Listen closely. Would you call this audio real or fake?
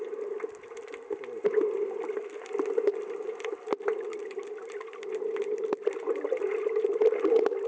real